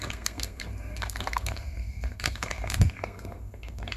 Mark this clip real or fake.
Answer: fake